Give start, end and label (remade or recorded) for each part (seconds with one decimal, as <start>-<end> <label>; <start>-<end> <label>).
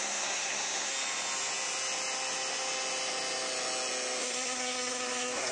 0.0-0.9 remade; 0.9-4.2 recorded; 4.2-5.5 remade